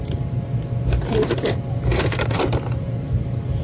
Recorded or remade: remade